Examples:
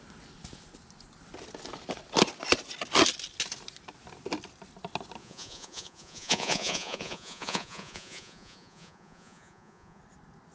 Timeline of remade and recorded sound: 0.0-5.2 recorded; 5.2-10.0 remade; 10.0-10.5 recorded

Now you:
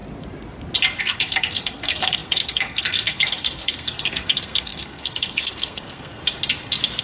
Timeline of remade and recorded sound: 0.0-1.0 recorded; 1.0-6.2 remade; 6.2-7.0 recorded

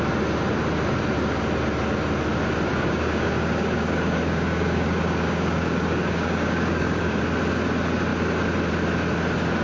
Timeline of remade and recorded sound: 0.0-2.7 recorded; 2.7-7.2 remade; 7.2-9.6 recorded

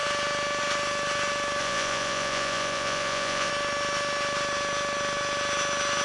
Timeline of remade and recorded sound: 0.0-1.6 recorded; 1.6-3.5 remade; 3.5-6.0 recorded

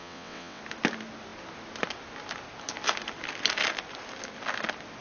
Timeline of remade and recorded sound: 0.0-0.6 remade; 0.6-5.0 recorded